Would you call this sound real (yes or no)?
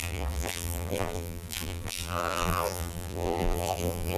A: no